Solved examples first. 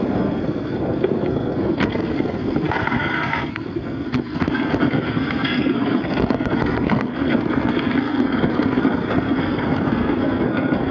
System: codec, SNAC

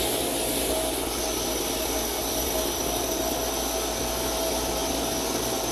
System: none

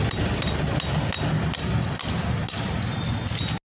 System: none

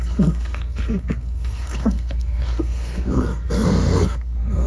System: codec, SNAC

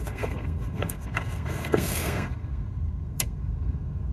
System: codec, SNAC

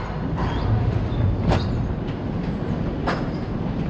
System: none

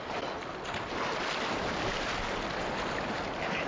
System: none